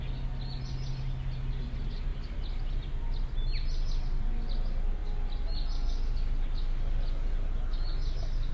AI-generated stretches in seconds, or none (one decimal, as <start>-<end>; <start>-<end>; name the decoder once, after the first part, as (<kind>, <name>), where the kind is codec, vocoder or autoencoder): none